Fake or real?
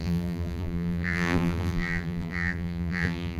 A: fake